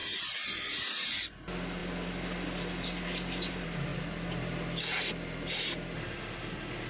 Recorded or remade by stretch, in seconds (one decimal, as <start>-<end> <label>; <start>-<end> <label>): 0.0-6.9 recorded